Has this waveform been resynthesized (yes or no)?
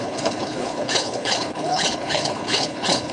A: yes